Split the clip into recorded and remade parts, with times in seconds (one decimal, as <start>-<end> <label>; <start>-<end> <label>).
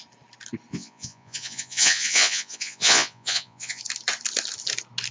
0.0-0.7 recorded; 0.7-3.8 remade; 3.8-5.1 recorded